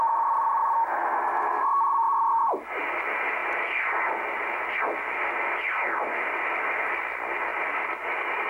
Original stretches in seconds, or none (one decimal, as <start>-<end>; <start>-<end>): 0.0-8.5